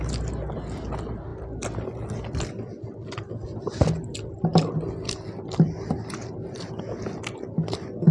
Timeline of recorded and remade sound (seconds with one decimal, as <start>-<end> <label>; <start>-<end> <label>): 0.0-1.3 recorded; 1.3-3.6 remade; 3.6-4.5 recorded; 4.5-6.8 remade; 6.8-8.1 recorded